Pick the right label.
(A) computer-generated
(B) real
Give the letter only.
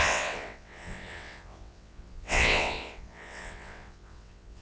A